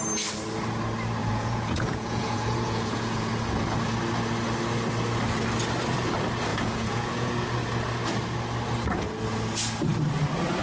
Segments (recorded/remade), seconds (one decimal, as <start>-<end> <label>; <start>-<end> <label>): 0.0-1.2 recorded; 1.2-3.3 remade; 3.3-6.5 recorded; 6.5-7.3 remade; 7.3-10.6 recorded